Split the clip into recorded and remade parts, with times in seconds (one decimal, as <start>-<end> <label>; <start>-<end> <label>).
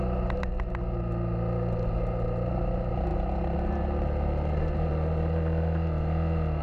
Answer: 0.0-6.6 recorded